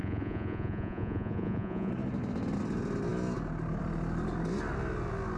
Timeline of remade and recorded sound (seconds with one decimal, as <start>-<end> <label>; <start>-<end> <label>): 0.0-1.9 remade; 1.9-5.4 recorded

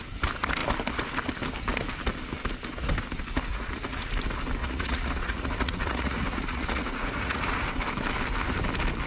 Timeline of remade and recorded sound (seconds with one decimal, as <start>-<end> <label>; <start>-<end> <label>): 0.0-3.5 recorded; 3.5-4.1 remade; 4.1-4.6 recorded; 4.6-7.7 remade; 7.7-9.1 recorded

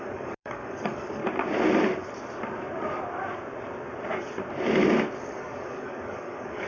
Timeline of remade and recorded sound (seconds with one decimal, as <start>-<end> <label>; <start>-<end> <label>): 0.0-1.2 remade; 1.2-5.2 recorded; 5.2-6.7 remade

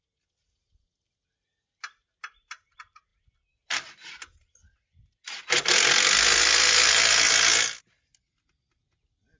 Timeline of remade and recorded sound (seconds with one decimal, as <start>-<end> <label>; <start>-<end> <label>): 0.0-9.4 recorded

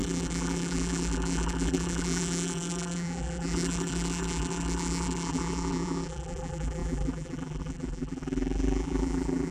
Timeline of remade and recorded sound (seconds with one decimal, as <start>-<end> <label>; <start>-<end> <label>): 0.0-9.5 remade